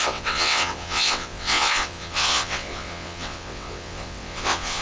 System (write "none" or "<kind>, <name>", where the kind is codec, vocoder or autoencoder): vocoder, WaveNeXt